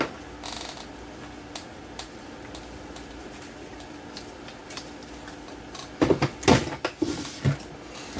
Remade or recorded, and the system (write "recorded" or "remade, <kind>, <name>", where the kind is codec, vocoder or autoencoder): recorded